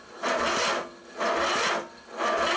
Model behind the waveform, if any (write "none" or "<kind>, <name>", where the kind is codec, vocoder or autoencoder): none